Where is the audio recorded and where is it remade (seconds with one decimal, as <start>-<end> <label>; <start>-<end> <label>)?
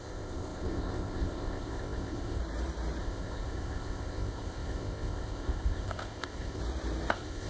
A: 0.0-2.4 remade; 2.4-3.0 recorded; 3.0-6.6 remade; 6.6-7.1 recorded; 7.1-7.5 remade